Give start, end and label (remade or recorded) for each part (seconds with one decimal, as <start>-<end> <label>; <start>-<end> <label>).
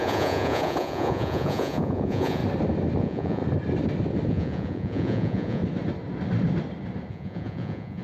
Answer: 0.0-2.4 remade; 2.4-3.0 recorded; 3.0-3.4 remade; 3.4-4.3 recorded; 4.3-5.6 remade; 5.6-7.1 recorded; 7.1-8.0 remade